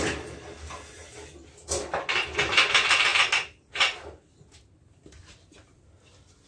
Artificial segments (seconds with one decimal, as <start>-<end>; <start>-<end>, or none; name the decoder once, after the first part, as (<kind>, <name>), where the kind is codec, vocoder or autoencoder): none

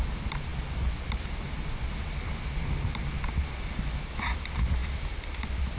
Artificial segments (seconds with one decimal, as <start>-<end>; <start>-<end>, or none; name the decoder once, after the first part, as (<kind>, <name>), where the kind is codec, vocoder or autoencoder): none

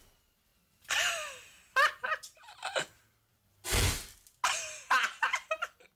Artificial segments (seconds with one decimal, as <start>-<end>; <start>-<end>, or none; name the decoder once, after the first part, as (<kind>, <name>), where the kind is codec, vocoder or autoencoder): none

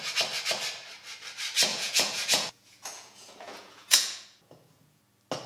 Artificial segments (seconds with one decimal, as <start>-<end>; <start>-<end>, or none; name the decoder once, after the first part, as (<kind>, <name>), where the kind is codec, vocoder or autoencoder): 1.7-5.0 (vocoder, Vocos)

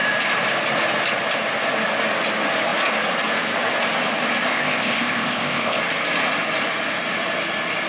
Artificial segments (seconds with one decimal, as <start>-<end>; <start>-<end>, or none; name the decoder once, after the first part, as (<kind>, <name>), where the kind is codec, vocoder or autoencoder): 4.5-5.8 (codec, ZipCodec)

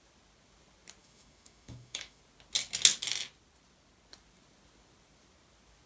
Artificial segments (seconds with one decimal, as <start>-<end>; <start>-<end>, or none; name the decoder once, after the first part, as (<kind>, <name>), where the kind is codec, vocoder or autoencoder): 1.0-2.2 (autoencoder, DAC-VAE)

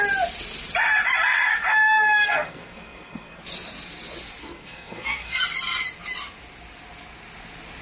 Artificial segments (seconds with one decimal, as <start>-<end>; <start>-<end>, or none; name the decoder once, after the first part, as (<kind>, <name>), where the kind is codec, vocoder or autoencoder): 1.7-3.4 (codec, SNAC); 4.4-5.4